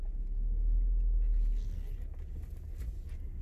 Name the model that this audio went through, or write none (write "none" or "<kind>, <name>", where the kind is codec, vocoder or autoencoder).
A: none